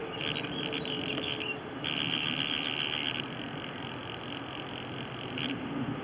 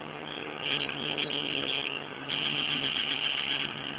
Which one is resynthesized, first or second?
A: second